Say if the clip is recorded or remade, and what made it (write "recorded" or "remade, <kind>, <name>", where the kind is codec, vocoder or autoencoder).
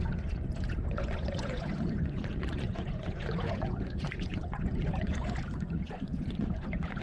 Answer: remade, vocoder, Vocos